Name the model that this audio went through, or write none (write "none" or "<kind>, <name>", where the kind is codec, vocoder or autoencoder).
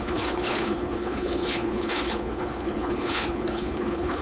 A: codec, HILCodec